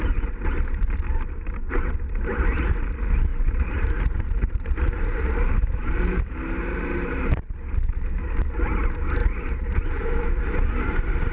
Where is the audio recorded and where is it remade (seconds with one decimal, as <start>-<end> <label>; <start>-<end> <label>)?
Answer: 0.0-3.3 recorded; 3.3-6.2 remade; 6.2-9.2 recorded; 9.2-10.3 remade; 10.3-11.3 recorded